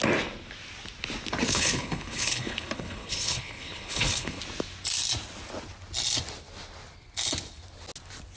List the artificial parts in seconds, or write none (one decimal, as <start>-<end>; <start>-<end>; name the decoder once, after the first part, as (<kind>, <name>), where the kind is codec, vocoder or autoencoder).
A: 1.5-4.4 (codec, HILCodec)